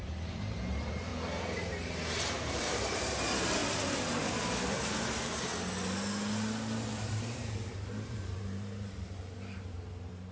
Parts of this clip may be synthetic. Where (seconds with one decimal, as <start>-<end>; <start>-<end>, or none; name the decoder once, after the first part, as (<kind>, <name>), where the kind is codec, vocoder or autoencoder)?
0.0-1.1 (vocoder, BigVGAN v2); 2.1-3.6; 5.0-5.5; 6.9-10.3